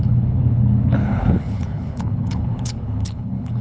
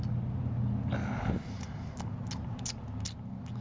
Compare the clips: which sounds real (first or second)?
second